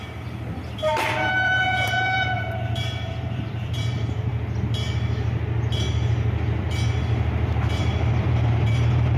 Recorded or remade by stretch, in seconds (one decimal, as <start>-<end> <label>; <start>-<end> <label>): 0.0-4.3 remade; 4.3-7.8 recorded; 7.8-9.2 remade